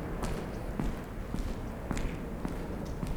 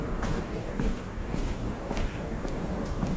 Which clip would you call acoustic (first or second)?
first